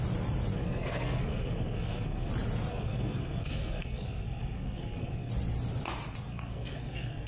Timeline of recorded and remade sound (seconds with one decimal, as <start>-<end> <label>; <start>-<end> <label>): 0.0-0.5 recorded; 0.5-2.3 remade; 2.3-2.7 recorded; 2.7-5.3 remade; 5.3-6.3 recorded; 6.3-7.3 remade